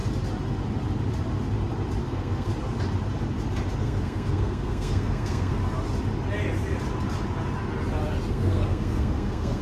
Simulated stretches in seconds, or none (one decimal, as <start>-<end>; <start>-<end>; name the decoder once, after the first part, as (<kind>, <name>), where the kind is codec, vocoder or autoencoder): 2.0-2.5 (codec, SNAC); 3.8-5.6; 8.3-9.6